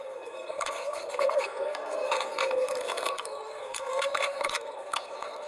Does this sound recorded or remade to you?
remade